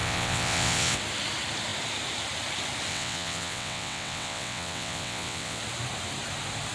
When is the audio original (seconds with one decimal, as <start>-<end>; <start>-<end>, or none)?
1.0-2.9; 5.6-6.7